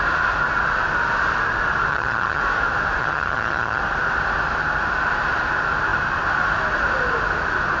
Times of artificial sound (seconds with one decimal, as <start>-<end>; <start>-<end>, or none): 1.9-2.4; 3.0-3.8